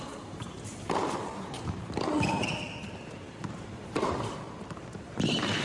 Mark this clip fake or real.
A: fake